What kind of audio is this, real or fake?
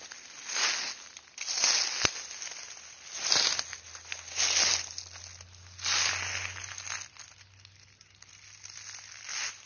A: real